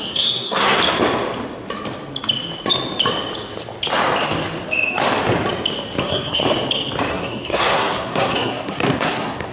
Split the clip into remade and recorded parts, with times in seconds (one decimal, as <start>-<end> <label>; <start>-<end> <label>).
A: 0.0-0.8 remade; 0.8-6.0 recorded; 6.0-6.4 remade; 6.4-7.1 recorded; 7.1-9.5 remade